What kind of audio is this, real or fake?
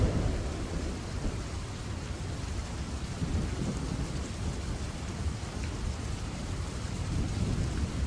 fake